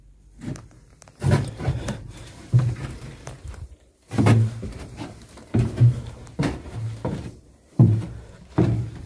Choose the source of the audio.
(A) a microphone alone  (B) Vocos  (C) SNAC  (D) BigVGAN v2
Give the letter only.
D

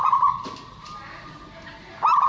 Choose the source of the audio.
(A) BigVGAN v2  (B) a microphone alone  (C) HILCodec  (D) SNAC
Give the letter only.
B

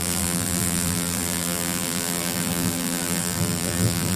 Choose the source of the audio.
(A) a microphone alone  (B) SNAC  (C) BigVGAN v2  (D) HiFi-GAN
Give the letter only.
C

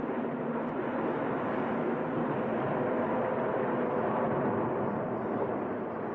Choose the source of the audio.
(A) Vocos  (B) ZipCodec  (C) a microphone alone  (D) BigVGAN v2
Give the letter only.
C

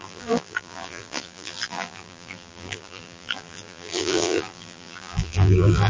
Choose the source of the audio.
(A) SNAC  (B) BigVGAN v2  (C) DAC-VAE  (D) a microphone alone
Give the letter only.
B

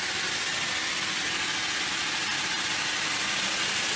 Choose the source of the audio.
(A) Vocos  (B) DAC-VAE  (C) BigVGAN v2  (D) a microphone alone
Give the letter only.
C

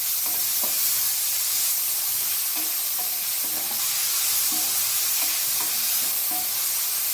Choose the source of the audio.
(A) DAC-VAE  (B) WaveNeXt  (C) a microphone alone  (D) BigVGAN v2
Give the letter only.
C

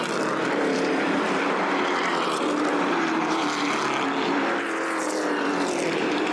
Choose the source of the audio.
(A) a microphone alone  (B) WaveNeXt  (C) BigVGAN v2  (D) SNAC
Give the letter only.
C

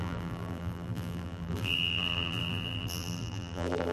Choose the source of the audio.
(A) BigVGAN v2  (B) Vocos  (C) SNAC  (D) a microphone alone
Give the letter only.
A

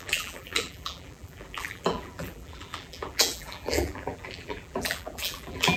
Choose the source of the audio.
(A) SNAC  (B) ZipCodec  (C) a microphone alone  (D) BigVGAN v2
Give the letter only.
D